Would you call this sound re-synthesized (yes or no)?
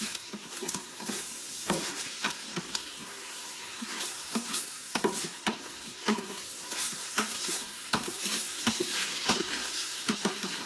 yes